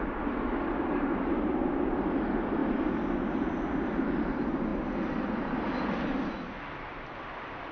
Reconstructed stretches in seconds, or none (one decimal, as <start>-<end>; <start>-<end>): none